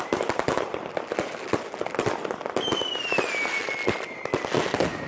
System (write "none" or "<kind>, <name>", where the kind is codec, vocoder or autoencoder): none